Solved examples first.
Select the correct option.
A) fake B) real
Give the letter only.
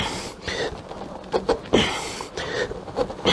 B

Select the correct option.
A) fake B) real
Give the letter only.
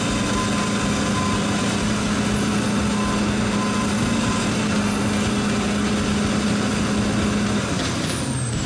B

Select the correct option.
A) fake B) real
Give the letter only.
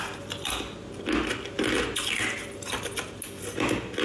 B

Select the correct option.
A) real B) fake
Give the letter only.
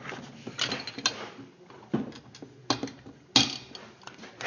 A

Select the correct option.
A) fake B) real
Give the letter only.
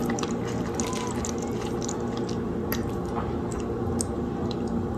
B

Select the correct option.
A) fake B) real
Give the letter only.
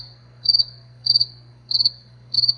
A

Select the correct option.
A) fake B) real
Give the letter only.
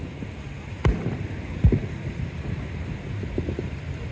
A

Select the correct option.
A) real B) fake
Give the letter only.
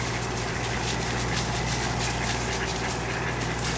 A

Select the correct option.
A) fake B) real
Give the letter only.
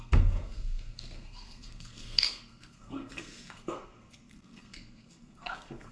A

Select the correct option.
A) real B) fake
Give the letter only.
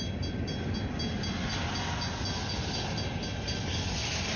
A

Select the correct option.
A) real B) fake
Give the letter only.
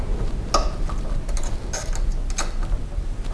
A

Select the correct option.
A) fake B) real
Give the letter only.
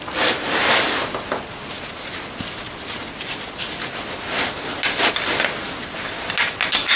B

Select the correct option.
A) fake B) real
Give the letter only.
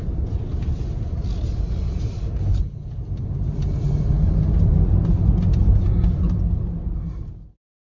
B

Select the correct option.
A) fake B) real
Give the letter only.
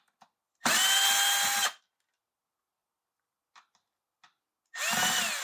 B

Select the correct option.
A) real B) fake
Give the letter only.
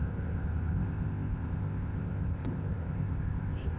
B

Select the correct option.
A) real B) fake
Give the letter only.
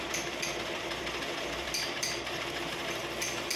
B